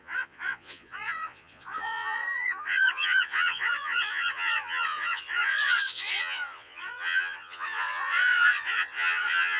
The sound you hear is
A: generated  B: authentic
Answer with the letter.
A